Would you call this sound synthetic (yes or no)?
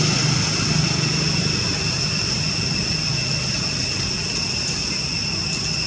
no